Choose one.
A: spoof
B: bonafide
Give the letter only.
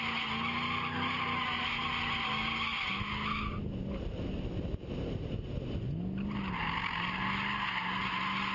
B